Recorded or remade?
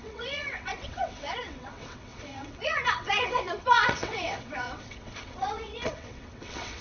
remade